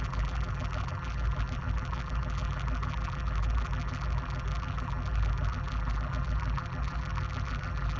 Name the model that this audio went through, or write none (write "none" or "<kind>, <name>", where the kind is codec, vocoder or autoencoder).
vocoder, BigVGAN v2